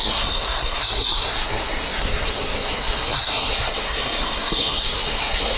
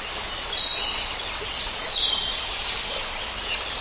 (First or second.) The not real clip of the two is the first